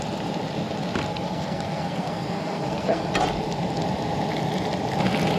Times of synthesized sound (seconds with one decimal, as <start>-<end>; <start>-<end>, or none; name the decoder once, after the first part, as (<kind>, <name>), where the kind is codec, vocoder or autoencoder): 1.1-3.1 (codec, SNAC)